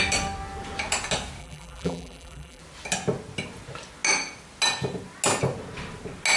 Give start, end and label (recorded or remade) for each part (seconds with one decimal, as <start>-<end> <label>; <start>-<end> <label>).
0.0-1.4 recorded; 1.4-2.6 remade; 2.6-6.4 recorded